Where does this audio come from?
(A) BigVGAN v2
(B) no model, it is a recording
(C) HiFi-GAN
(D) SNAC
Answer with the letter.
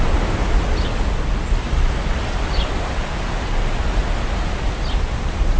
B